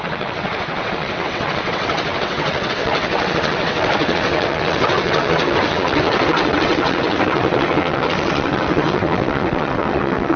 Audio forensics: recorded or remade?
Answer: remade